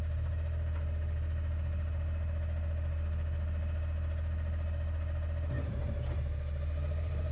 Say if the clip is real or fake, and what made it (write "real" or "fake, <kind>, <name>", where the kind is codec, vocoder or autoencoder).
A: real